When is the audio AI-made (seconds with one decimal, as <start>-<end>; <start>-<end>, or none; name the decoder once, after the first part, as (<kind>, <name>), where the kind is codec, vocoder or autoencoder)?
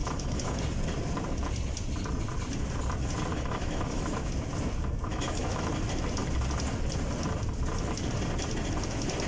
0.0-0.6 (autoencoder, DAC-VAE); 3.3-4.3; 5.1-5.7